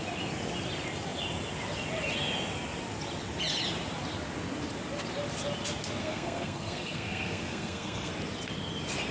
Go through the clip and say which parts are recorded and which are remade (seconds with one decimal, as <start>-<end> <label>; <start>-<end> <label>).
0.0-6.0 recorded; 6.0-8.1 remade; 8.1-9.1 recorded